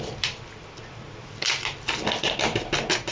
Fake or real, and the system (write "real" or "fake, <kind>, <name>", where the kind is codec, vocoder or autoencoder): real